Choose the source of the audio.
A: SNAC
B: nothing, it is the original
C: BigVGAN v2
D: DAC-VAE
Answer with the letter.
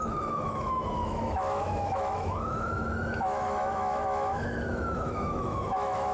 D